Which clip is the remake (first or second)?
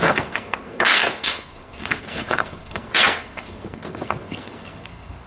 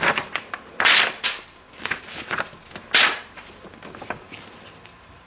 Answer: first